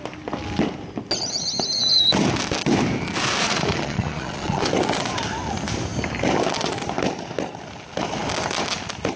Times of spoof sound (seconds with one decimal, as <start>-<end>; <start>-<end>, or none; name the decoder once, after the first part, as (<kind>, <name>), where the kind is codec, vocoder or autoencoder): 3.4-4.7 (vocoder, Vocos)